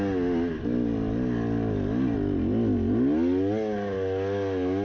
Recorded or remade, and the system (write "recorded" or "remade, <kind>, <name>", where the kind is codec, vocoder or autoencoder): recorded